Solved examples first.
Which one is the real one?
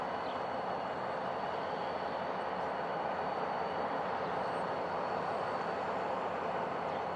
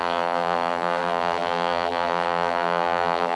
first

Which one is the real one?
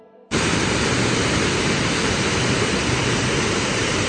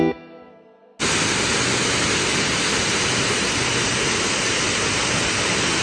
second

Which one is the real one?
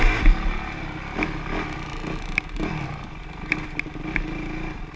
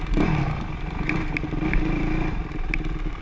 first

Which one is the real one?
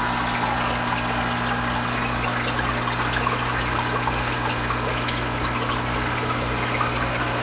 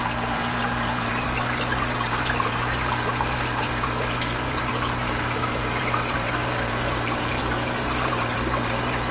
first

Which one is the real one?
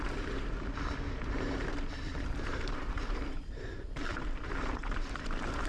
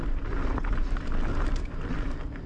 second